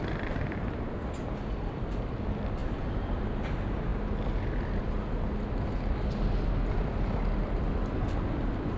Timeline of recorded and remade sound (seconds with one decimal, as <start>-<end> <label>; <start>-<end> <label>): 0.0-8.8 recorded